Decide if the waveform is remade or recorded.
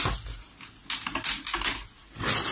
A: recorded